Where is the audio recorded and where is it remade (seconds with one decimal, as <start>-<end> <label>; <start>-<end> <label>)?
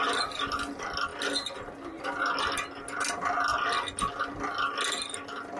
0.0-5.6 recorded